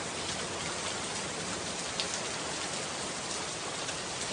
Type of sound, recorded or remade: recorded